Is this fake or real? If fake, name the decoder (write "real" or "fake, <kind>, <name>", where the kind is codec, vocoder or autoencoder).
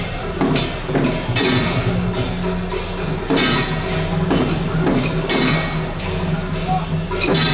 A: real